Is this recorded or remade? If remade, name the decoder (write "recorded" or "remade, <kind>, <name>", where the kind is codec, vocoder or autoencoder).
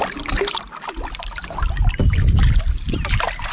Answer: recorded